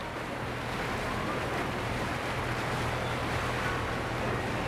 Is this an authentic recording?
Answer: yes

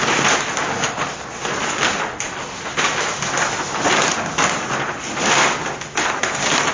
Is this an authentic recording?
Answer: yes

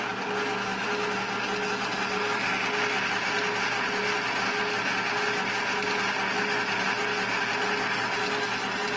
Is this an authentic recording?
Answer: yes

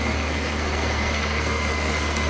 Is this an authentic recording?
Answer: no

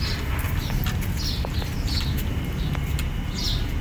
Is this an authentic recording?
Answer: yes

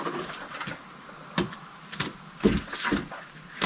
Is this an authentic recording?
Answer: yes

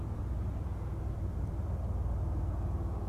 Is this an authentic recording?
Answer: yes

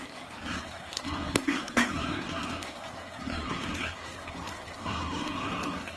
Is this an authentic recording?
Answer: no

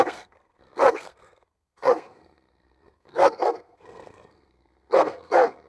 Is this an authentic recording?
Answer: no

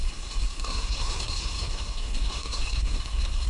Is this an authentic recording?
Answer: no